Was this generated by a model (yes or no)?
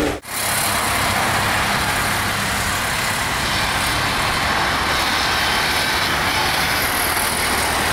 no